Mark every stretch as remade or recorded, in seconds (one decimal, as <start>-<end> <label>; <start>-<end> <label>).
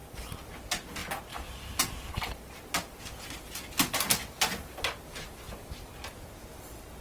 0.0-0.5 remade; 0.5-4.2 recorded; 4.2-5.6 remade; 5.6-7.0 recorded